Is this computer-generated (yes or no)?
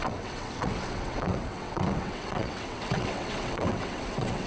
yes